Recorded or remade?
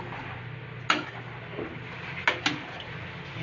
recorded